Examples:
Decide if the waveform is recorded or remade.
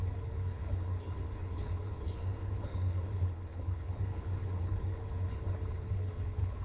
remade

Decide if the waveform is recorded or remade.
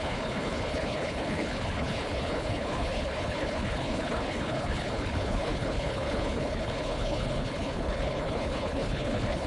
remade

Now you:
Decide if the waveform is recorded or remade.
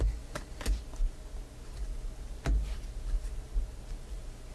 recorded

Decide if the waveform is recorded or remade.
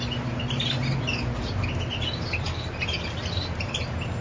remade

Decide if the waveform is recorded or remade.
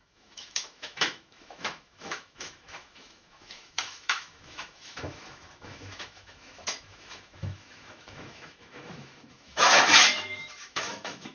remade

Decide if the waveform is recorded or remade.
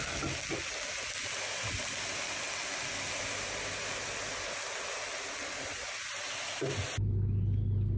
recorded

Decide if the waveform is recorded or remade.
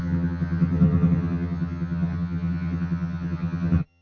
remade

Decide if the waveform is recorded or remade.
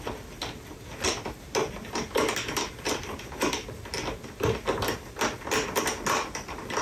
recorded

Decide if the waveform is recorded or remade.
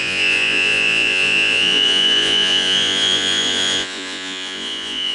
remade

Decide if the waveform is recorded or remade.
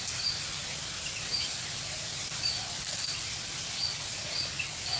remade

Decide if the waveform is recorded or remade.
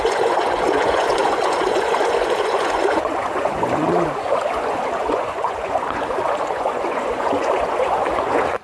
remade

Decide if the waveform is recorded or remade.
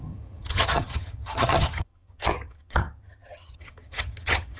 remade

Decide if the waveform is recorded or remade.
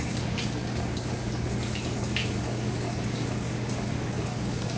remade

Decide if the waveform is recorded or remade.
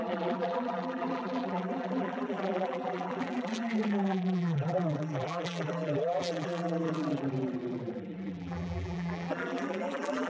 remade